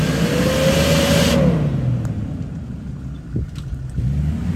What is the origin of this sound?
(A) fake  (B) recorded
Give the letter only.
B